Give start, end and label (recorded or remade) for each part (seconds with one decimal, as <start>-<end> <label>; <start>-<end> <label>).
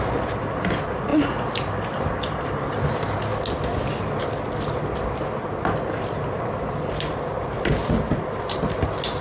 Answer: 0.0-9.2 recorded